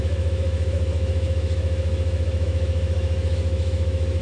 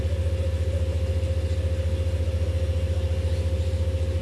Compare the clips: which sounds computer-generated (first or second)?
first